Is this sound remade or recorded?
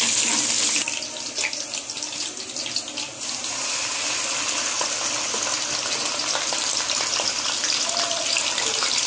recorded